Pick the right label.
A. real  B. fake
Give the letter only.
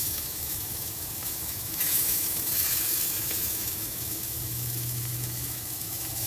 B